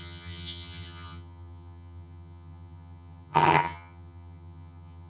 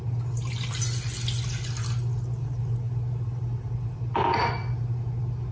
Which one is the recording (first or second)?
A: second